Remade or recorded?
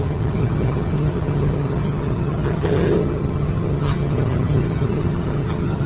remade